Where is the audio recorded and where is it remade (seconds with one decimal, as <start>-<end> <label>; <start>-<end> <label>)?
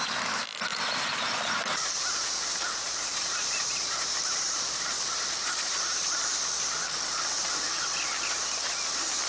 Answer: 0.0-0.7 recorded; 0.7-2.0 remade; 2.0-2.5 recorded; 2.5-6.0 remade; 6.0-9.3 recorded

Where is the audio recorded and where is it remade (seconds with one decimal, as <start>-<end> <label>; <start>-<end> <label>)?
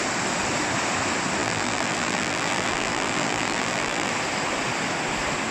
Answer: 0.0-1.4 recorded; 1.4-4.1 remade; 4.1-5.5 recorded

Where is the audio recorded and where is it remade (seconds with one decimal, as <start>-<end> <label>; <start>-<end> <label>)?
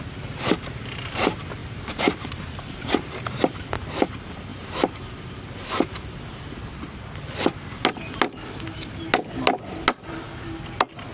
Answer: 0.0-1.6 recorded; 1.6-3.6 remade; 3.6-11.1 recorded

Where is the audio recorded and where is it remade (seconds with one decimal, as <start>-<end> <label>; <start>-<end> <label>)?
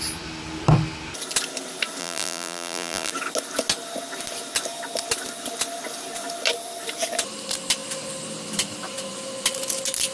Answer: 0.0-2.0 recorded; 2.0-3.1 remade; 3.1-10.1 recorded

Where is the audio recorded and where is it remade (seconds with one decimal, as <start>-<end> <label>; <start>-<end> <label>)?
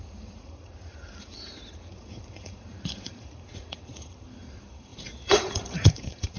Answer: 0.0-6.4 remade